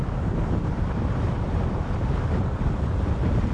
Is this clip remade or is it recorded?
recorded